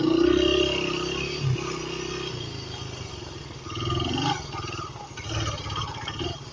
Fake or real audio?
real